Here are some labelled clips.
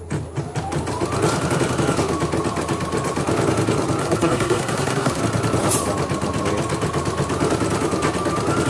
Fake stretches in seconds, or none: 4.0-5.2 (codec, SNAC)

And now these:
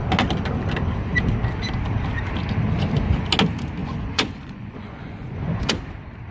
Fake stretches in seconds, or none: 3.8-5.7 (vocoder, Vocos)

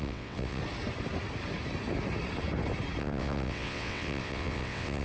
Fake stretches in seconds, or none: 0.0-0.6 (vocoder, WaveNeXt); 3.0-5.0